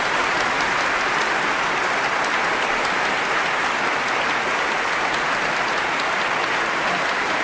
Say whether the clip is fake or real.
real